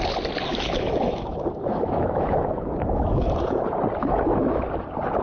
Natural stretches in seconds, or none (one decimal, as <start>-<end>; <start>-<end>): 0.0-0.5; 3.6-4.0; 4.6-5.2